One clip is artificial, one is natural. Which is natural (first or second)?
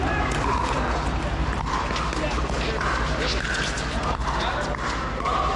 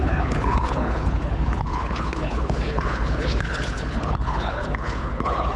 first